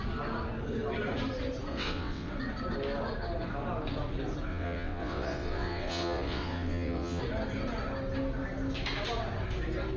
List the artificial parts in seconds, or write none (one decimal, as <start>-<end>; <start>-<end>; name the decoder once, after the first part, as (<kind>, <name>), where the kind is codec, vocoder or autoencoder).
1.7-2.3 (vocoder, WaveNeXt); 4.5-7.2